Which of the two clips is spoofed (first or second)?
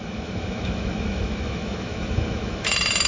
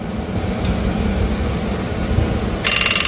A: first